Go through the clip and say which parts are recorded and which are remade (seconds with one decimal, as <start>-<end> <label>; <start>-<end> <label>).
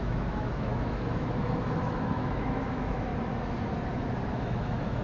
0.0-3.1 remade; 3.1-4.3 recorded; 4.3-5.0 remade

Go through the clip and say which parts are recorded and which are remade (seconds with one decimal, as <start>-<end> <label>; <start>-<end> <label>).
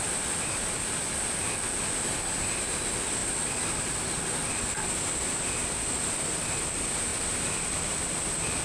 0.0-8.6 recorded